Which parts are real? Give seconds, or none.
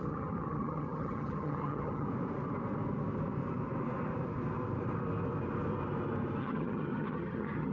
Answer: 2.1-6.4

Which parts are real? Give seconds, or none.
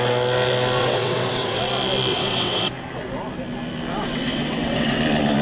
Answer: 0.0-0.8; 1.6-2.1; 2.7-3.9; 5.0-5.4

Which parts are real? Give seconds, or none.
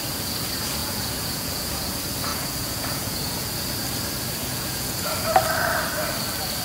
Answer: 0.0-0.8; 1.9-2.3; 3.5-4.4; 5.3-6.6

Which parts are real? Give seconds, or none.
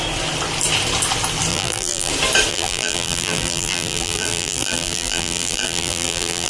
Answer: 0.0-1.5; 2.1-2.5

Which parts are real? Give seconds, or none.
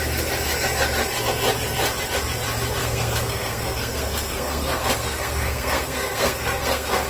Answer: 0.0-2.8